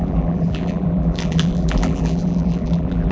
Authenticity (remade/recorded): remade